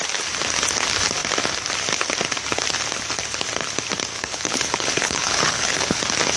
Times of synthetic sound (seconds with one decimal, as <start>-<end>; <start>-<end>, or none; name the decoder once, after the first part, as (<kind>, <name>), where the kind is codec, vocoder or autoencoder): 4.1-6.0 (codec, HILCodec)